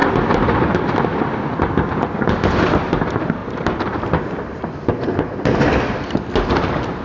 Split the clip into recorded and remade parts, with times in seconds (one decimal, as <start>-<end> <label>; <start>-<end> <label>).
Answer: 0.0-7.0 recorded

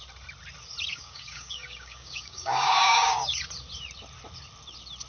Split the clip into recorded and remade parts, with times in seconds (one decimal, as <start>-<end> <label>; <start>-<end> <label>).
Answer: 0.0-0.9 recorded; 0.9-3.4 remade; 3.4-5.1 recorded

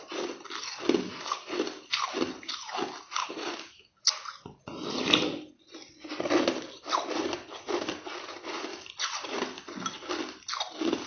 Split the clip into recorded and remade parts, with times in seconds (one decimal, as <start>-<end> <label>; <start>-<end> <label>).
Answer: 0.0-3.2 recorded; 3.2-4.1 remade; 4.1-11.1 recorded

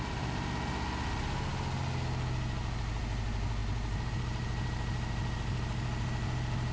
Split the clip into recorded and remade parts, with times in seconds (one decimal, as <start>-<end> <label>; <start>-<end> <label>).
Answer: 0.0-6.7 recorded

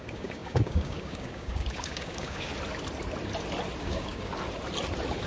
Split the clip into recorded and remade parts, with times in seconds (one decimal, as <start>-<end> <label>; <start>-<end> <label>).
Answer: 0.0-2.5 remade; 2.5-3.8 recorded; 3.8-4.3 remade; 4.3-5.3 recorded